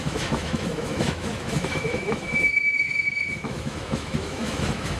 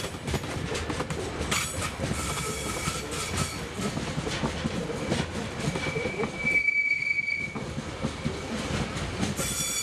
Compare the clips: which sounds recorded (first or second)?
second